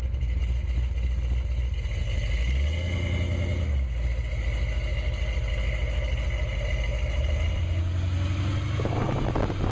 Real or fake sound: real